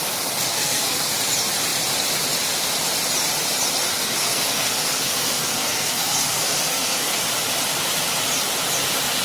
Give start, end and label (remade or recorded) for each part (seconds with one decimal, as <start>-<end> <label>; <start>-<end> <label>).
0.0-0.5 recorded; 0.5-1.1 remade; 1.1-3.8 recorded; 3.8-7.2 remade; 7.2-9.2 recorded